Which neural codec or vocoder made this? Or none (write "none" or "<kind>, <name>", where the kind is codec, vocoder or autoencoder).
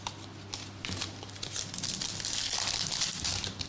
none